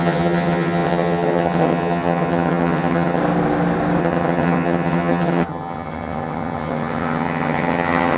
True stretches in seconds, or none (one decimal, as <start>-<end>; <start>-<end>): 3.2-4.0